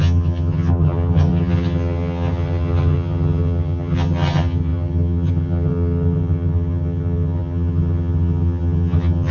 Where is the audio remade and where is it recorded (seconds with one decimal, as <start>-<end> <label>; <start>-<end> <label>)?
0.0-9.3 remade